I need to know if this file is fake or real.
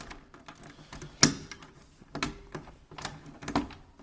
real